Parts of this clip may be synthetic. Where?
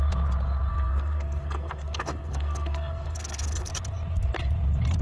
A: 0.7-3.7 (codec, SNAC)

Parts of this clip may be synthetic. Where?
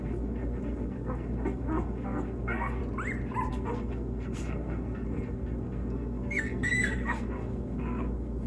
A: 0.0-2.8 (codec, SNAC); 3.5-8.5